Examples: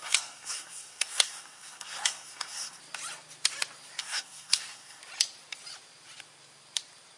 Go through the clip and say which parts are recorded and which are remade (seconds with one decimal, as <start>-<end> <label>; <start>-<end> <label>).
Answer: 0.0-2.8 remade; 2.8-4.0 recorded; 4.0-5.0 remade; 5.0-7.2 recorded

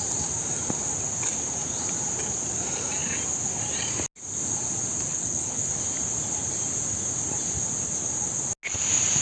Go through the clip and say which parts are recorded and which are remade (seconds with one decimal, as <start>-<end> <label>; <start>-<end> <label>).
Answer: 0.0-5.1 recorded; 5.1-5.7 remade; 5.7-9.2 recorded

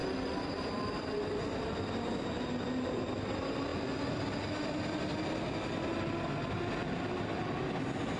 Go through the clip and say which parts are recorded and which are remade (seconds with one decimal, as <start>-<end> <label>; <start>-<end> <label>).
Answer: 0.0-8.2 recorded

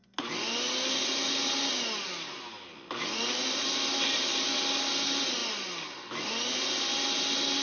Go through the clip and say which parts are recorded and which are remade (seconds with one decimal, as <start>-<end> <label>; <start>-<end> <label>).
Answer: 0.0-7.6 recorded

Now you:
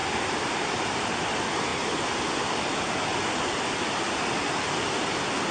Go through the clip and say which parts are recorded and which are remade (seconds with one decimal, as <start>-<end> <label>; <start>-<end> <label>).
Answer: 0.0-0.8 remade; 0.8-1.7 recorded; 1.7-2.6 remade; 2.6-3.1 recorded; 3.1-4.1 remade; 4.1-5.5 recorded

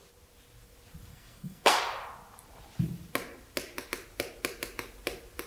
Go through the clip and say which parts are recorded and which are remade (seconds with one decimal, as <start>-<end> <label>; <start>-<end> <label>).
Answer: 0.0-1.1 recorded; 1.1-1.8 remade; 1.8-5.5 recorded